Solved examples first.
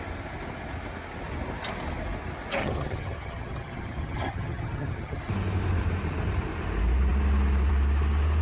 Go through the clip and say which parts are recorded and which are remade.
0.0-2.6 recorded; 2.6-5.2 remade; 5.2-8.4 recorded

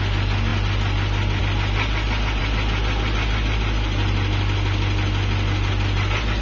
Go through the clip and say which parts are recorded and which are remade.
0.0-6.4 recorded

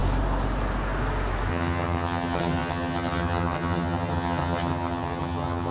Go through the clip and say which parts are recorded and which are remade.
0.0-1.5 recorded; 1.5-5.7 remade

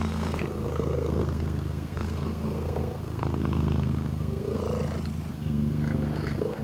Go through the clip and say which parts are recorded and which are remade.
0.0-4.6 remade; 4.6-5.3 recorded; 5.3-6.6 remade

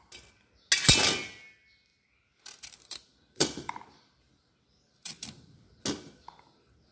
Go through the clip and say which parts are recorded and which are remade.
0.0-1.9 recorded; 1.9-5.8 remade; 5.8-6.9 recorded

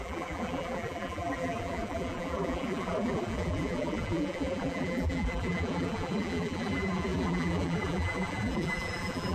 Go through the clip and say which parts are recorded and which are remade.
0.0-9.3 remade

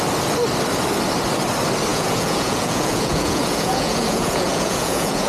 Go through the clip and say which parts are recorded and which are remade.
0.0-1.9 recorded; 1.9-5.3 remade

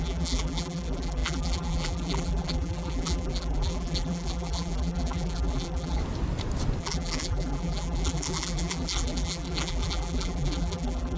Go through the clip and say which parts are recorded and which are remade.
0.0-6.0 remade; 6.0-6.8 recorded; 6.8-11.2 remade